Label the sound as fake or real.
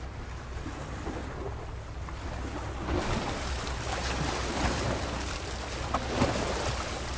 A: real